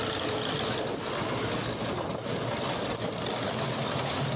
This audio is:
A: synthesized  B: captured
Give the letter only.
B